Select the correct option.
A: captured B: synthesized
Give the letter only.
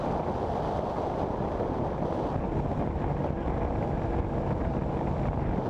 A